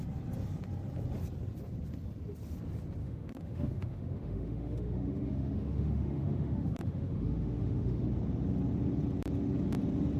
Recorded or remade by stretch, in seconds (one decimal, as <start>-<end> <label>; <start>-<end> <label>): 0.0-3.0 recorded; 3.0-8.0 remade; 8.0-10.2 recorded